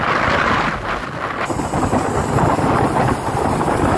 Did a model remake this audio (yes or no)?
no